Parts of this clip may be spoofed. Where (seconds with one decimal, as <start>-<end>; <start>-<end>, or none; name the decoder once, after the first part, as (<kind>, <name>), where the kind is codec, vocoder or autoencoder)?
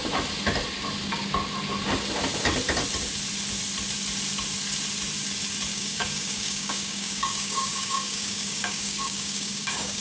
5.7-10.0 (codec, DAC)